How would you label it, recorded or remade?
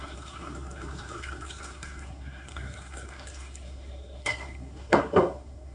remade